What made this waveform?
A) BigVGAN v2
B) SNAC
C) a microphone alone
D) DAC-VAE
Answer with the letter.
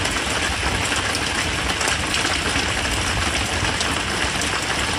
C